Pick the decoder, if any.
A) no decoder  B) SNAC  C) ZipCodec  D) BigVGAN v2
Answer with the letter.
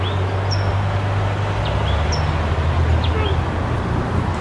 A